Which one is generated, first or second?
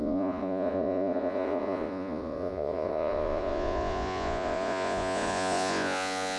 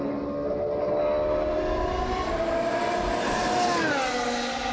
first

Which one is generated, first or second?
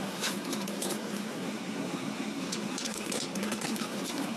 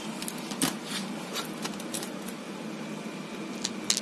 first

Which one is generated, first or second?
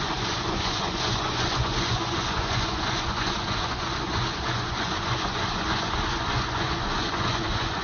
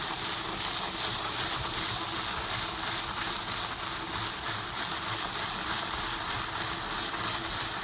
first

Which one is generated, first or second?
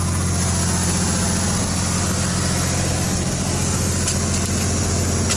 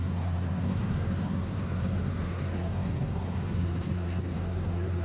second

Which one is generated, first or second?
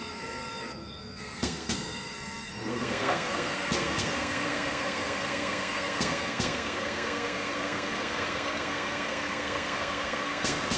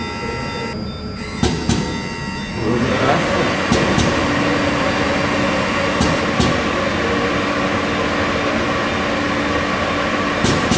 first